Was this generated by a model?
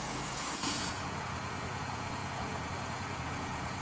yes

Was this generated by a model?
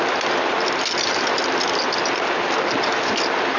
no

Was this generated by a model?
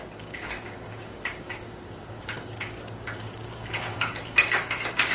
yes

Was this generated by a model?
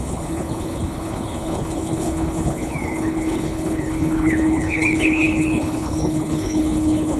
yes